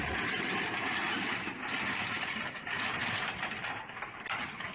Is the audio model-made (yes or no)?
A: no